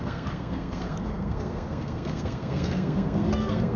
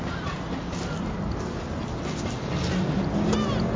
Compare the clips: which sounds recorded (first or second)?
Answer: second